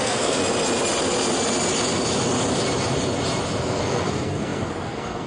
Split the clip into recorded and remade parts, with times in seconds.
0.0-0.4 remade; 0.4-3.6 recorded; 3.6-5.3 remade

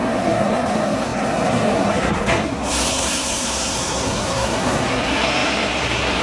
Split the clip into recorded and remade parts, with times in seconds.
0.0-6.2 remade

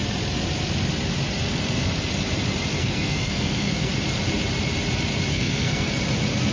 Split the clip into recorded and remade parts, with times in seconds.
0.0-2.8 recorded; 2.8-3.9 remade; 3.9-5.3 recorded; 5.3-5.9 remade; 5.9-6.5 recorded